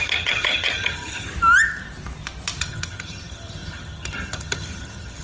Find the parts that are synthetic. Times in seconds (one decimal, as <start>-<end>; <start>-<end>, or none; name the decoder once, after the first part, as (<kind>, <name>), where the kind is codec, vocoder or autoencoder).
0.0-1.3 (vocoder, HiFi-GAN); 2.6-5.2